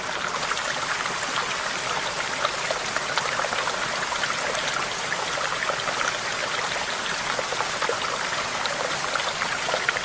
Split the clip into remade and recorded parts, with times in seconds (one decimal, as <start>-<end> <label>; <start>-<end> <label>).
0.0-6.4 recorded; 6.4-7.2 remade; 7.2-10.0 recorded